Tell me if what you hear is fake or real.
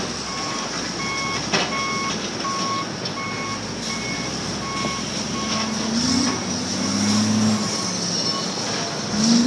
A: real